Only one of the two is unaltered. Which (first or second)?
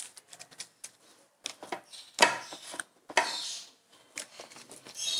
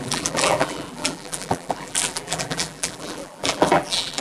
first